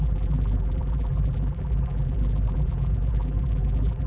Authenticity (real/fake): fake